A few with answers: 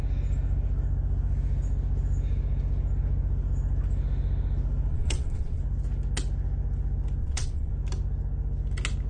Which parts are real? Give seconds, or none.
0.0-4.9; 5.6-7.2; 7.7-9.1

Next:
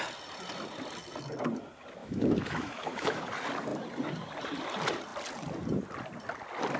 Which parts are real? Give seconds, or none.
0.0-2.0; 3.2-6.8

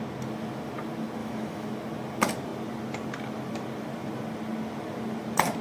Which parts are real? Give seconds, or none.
0.0-1.2; 1.7-5.6

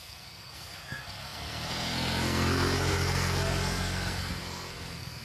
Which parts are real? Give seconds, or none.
none

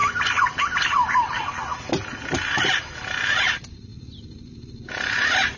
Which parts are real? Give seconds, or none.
1.4-5.6

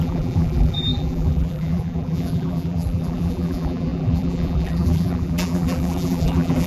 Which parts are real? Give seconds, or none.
none